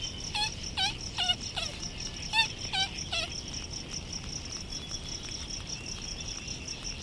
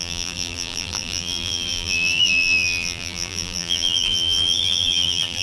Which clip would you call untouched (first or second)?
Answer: first